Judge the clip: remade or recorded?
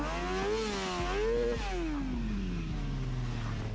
recorded